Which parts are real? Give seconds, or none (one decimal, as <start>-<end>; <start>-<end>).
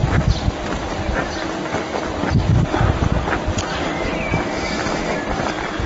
0.0-5.9